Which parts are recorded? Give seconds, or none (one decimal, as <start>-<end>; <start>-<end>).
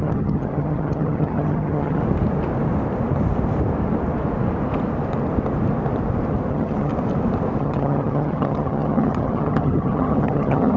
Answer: 2.0-6.5; 6.9-7.6